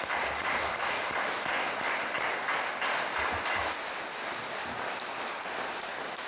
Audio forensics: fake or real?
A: real